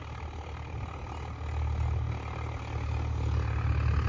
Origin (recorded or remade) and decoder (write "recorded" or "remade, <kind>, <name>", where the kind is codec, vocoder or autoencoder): recorded